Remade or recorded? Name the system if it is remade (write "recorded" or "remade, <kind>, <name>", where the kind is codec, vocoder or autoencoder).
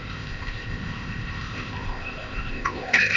remade, codec, ZipCodec